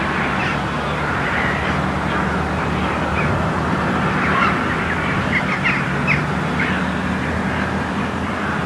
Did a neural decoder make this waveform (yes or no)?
no